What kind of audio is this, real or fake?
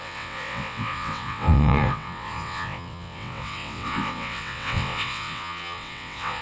fake